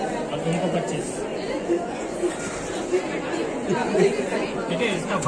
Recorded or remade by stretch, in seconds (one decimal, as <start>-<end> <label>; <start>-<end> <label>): 0.0-1.3 recorded; 1.3-2.3 remade; 2.3-3.3 recorded; 3.3-5.3 remade